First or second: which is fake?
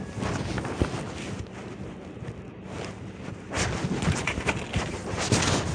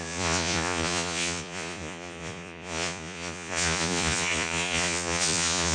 second